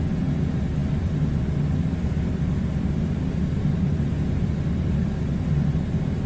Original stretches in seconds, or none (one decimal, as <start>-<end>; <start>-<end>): 0.0-6.3